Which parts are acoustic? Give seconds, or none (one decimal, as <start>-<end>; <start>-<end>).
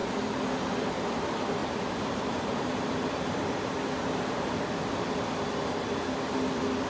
0.0-1.6; 4.6-6.9